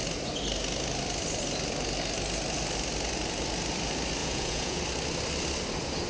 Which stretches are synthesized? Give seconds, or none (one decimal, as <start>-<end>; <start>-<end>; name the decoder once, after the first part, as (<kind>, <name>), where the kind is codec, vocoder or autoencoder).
4.2-4.8 (vocoder, Vocos)